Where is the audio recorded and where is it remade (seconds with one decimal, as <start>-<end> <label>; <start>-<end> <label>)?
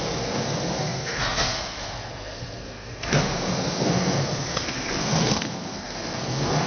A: 0.0-6.7 remade